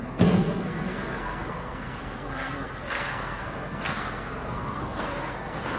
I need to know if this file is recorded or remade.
remade